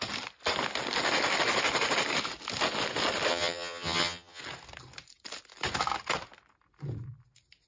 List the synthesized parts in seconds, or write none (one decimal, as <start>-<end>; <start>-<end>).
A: 3.3-4.4